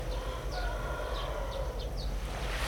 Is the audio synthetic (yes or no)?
no